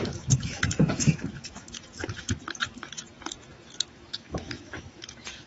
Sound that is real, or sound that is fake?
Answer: fake